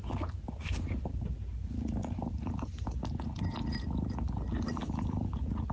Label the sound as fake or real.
real